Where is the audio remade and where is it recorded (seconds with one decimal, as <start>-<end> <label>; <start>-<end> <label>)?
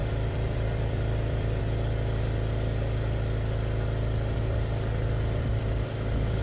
0.0-1.6 remade; 1.6-6.4 recorded